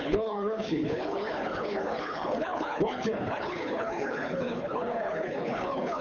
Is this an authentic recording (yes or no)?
no